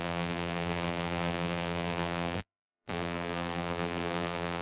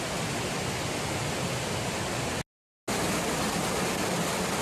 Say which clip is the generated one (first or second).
first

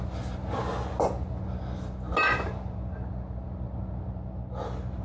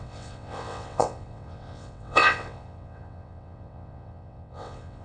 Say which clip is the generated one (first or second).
second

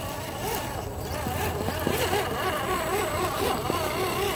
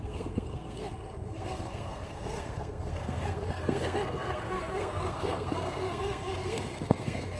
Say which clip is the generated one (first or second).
second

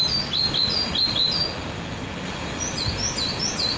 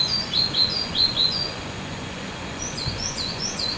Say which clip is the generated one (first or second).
second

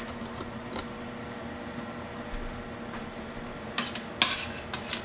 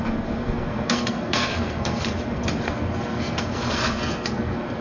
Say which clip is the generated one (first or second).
second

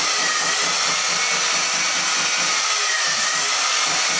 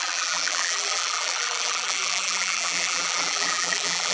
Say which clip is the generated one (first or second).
second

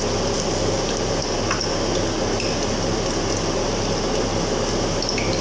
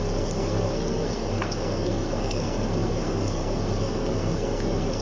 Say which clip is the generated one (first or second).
second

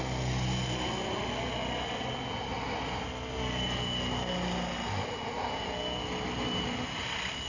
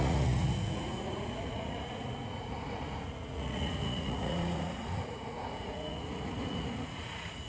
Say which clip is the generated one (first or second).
second